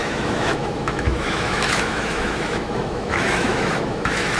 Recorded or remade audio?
remade